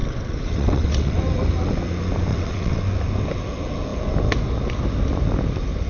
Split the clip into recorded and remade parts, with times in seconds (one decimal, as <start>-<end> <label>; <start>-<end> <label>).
0.0-1.1 remade; 1.1-2.3 recorded; 2.3-2.8 remade; 2.8-5.9 recorded

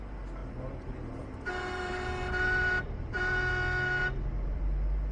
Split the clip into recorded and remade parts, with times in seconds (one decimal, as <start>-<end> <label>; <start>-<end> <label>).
0.0-0.4 recorded; 0.4-3.5 remade; 3.5-4.0 recorded; 4.0-4.6 remade; 4.6-5.1 recorded

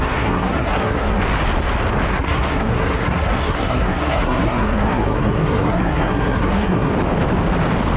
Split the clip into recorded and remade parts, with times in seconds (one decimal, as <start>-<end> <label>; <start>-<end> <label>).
0.0-1.2 remade; 1.2-2.1 recorded; 2.1-6.9 remade; 6.9-8.0 recorded

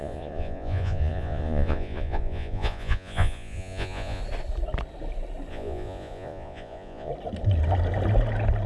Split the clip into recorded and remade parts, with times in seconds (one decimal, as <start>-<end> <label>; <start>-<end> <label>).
0.0-4.2 remade; 4.2-5.5 recorded; 5.5-7.1 remade; 7.1-8.7 recorded

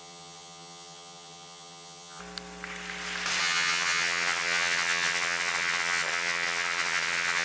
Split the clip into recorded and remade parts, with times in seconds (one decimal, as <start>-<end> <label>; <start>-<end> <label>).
0.0-2.2 remade; 2.2-3.4 recorded; 3.4-7.4 remade

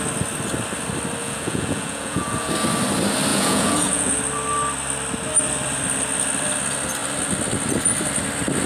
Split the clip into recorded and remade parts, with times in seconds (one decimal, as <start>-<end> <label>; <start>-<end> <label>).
0.0-1.2 recorded; 1.2-2.5 remade; 2.5-3.3 recorded; 3.3-4.2 remade; 4.2-8.7 recorded

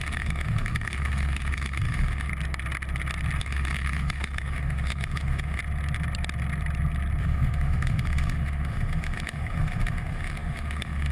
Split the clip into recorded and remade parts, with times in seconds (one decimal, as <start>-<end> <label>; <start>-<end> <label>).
0.0-2.3 remade; 2.3-3.4 recorded; 3.4-5.6 remade; 5.6-7.2 recorded; 7.2-11.1 remade